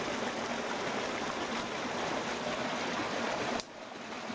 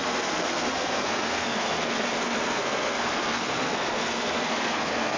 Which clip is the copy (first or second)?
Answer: second